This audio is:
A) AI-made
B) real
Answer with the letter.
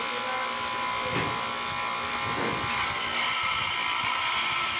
B